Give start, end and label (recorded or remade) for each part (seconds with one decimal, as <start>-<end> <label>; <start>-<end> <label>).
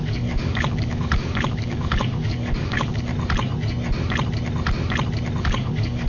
0.0-3.1 remade; 3.1-5.4 recorded; 5.4-6.1 remade